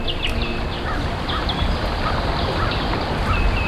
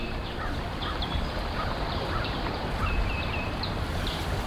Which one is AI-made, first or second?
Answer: second